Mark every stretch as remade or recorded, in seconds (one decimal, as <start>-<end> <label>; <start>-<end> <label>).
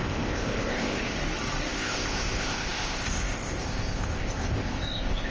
0.0-1.2 remade; 1.2-1.7 recorded; 1.7-5.3 remade